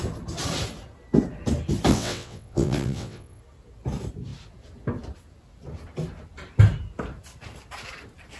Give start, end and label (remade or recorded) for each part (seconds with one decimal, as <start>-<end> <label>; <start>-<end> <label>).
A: 0.0-1.9 recorded; 1.9-3.4 remade; 3.4-8.4 recorded